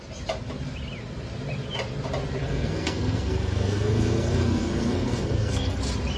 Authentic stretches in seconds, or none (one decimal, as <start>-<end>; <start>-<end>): 0.0-2.4; 5.8-6.2